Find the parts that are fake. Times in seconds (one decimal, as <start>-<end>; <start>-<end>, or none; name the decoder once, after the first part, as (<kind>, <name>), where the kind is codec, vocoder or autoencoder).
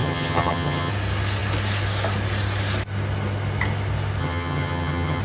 0.0-0.9 (vocoder, HiFi-GAN); 4.2-5.2